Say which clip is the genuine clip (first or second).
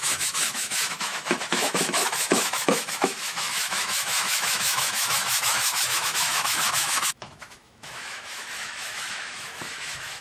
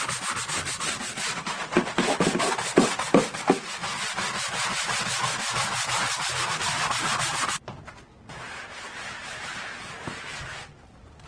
second